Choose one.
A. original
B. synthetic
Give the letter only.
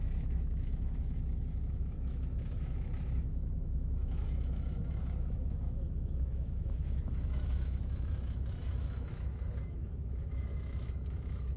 B